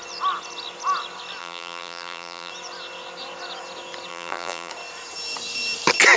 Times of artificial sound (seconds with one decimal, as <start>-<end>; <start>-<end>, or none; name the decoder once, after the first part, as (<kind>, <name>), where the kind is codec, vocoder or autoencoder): 1.4-2.5 (vocoder, BigVGAN v2); 4.1-4.7